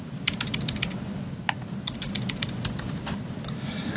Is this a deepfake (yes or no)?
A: no